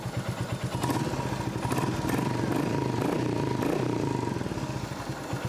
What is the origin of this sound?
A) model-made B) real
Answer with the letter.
B